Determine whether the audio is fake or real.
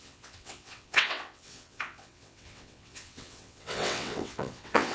fake